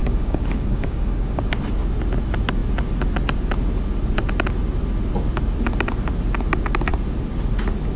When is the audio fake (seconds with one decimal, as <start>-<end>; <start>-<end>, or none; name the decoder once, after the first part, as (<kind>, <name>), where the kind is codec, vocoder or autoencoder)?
0.0-1.4 (codec, DAC)